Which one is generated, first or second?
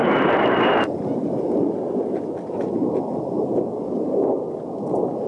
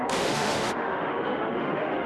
second